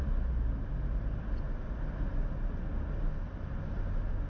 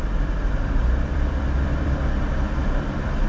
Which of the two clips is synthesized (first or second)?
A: second